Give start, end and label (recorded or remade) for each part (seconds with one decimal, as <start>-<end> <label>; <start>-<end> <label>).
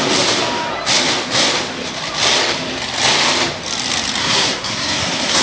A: 0.0-4.2 recorded; 4.2-5.4 remade